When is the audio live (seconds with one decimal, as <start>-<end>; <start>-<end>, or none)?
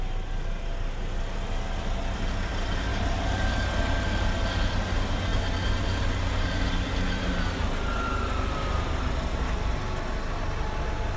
0.0-11.2